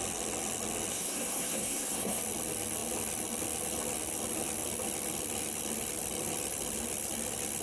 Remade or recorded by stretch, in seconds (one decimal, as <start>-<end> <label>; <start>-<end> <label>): 0.0-0.9 recorded; 0.9-2.2 remade; 2.2-7.6 recorded